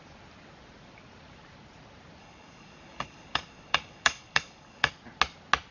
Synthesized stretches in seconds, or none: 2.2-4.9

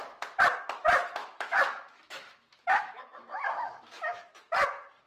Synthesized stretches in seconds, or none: 1.2-4.2